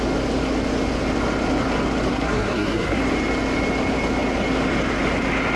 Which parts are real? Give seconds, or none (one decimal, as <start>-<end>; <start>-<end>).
0.0-2.1; 3.0-5.6